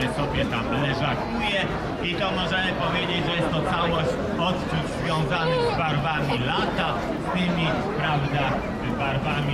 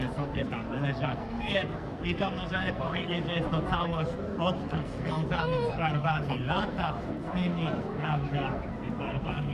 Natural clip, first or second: first